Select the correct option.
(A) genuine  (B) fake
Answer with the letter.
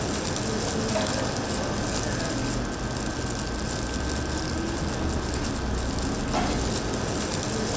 A